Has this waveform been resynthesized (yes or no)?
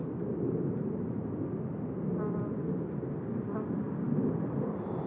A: no